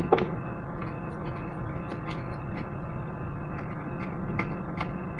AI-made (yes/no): no